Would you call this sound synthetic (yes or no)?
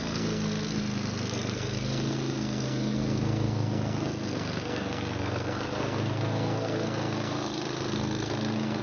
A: yes